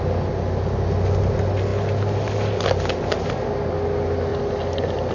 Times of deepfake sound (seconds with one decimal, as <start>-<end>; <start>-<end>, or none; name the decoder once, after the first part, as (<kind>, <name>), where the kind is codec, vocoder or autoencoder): none

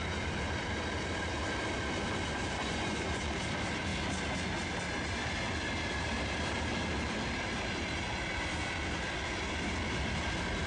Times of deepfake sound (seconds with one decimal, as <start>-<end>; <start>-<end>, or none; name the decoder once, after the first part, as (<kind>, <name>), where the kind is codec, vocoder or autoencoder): 2.6-3.3 (vocoder, Vocos)

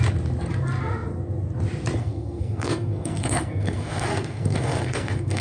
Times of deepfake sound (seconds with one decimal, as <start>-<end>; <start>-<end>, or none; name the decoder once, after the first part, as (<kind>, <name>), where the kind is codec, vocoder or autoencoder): 2.0-5.4 (codec, SNAC)

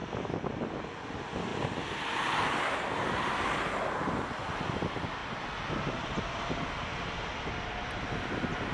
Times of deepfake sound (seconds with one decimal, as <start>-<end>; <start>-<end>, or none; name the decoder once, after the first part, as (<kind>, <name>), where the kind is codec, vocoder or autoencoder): 0.0-0.7 (vocoder, BigVGAN v2); 1.5-3.3

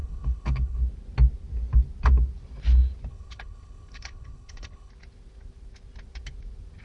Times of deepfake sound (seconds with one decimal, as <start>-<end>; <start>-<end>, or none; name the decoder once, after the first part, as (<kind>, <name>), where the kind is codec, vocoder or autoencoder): 0.0-0.8 (codec, HILCodec); 3.1-4.9

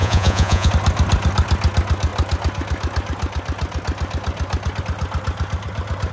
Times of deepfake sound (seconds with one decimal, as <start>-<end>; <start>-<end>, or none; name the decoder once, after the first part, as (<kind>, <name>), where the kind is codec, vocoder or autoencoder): 0.0-0.7 (vocoder, Vocos)

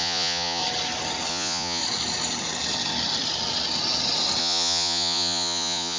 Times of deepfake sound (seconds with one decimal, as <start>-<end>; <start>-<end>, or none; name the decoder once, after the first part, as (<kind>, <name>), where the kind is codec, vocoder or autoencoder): 0.0-0.6 (vocoder, Vocos); 1.3-1.8; 4.4-6.0